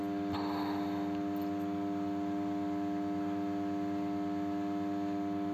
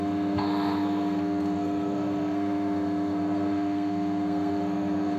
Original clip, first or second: first